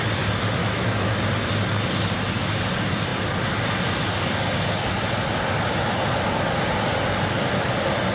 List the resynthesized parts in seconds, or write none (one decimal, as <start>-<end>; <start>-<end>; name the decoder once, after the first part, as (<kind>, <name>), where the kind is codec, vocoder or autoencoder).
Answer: 0.6-1.1 (autoencoder, DAC-VAE)